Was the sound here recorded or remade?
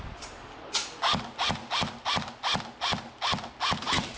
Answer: recorded